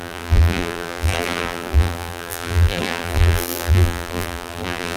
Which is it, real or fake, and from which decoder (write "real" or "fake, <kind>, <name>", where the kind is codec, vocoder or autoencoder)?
fake, vocoder, BigVGAN v2